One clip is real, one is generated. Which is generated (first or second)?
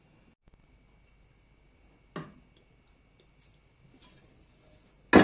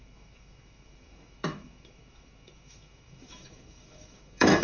second